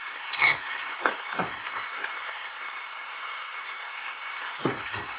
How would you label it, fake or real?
fake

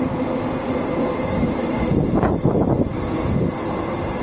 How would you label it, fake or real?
real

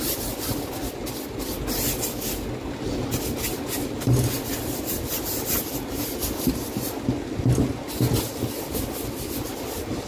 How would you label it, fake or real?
real